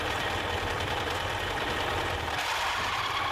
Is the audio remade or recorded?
remade